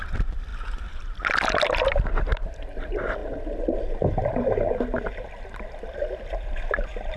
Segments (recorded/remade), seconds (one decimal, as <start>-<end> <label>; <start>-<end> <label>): 0.0-7.2 recorded